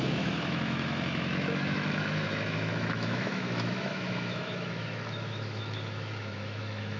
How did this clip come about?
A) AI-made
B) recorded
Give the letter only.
A